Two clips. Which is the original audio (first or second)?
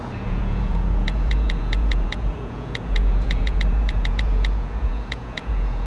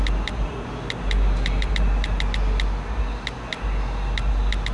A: second